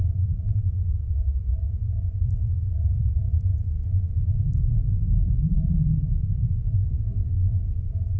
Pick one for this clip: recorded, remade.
remade